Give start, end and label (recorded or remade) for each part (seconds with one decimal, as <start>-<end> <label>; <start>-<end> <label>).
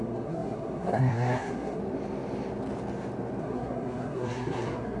0.0-1.8 remade; 1.8-3.4 recorded; 3.4-5.0 remade